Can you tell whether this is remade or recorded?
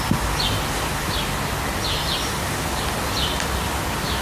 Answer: recorded